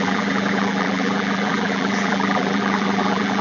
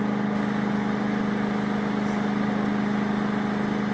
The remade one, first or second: first